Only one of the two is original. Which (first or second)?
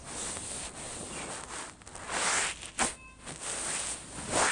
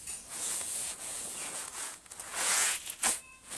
first